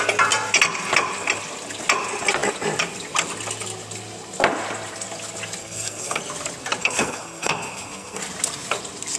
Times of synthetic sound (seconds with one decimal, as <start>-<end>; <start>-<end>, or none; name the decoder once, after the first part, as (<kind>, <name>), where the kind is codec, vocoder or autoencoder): 5.6-6.2 (codec, SNAC); 6.8-8.2